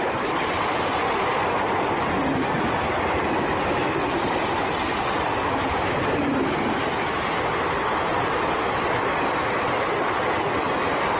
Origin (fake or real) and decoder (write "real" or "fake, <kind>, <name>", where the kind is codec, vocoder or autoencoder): real